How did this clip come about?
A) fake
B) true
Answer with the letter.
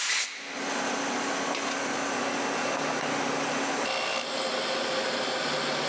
B